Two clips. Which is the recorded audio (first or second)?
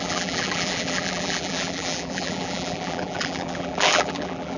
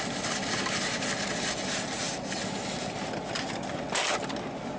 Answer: second